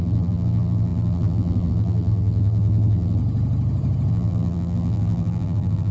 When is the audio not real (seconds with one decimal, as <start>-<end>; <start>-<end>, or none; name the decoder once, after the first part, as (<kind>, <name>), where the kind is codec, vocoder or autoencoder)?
0.0-3.2 (vocoder, BigVGAN v2); 4.1-5.9